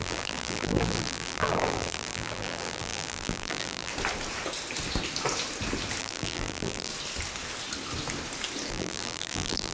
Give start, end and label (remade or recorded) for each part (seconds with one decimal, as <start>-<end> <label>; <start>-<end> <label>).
0.0-3.9 remade; 3.9-6.0 recorded; 6.0-6.9 remade; 6.9-8.7 recorded; 8.7-9.7 remade